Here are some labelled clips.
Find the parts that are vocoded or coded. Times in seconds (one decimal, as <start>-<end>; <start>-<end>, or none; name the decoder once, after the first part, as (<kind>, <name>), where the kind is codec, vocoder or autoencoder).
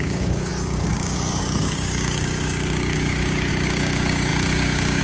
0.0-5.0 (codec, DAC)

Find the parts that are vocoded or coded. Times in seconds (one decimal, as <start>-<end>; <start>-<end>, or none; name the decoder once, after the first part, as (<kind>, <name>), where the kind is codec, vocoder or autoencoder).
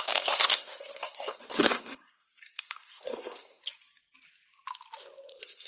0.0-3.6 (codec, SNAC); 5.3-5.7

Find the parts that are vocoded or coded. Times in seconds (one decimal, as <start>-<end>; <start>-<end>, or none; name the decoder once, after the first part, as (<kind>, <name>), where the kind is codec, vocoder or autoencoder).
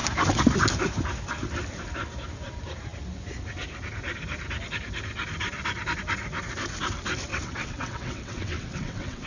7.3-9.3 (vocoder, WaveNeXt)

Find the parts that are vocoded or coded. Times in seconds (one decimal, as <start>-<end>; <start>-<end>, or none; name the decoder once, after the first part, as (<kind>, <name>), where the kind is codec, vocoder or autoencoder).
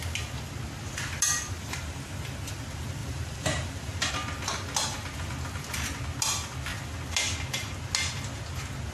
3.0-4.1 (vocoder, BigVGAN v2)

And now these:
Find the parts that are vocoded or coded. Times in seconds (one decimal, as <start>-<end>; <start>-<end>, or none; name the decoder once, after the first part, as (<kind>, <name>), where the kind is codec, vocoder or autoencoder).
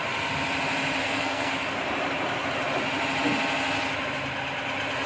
1.0-1.5 (codec, SNAC)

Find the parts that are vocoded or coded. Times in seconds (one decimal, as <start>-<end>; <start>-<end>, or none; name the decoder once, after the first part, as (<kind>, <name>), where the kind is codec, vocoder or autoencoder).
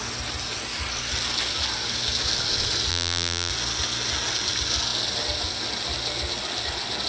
2.9-3.5 (vocoder, BigVGAN v2)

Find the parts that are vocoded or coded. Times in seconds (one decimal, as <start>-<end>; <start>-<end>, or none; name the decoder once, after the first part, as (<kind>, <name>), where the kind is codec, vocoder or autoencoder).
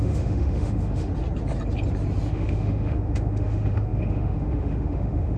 0.0-1.1 (autoencoder, DAC-VAE); 2.3-5.4